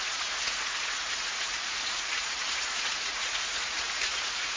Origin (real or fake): fake